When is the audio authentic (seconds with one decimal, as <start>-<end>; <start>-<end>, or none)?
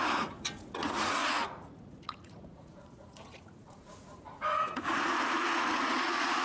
none